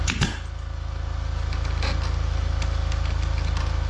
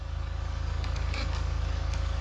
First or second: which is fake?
second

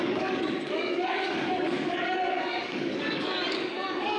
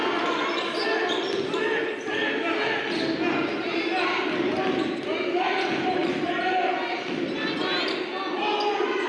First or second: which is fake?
first